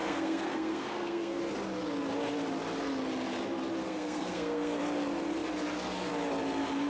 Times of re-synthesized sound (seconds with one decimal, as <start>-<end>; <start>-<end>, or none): 0.0-1.4; 3.8-4.8